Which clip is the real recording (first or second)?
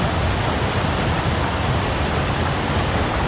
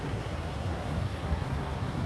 first